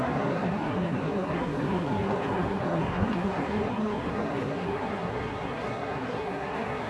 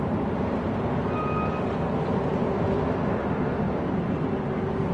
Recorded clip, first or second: second